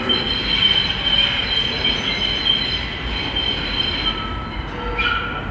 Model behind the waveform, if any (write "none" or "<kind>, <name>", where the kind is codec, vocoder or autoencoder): none